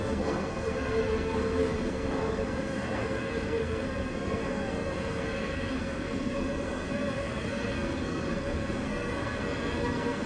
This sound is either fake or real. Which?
fake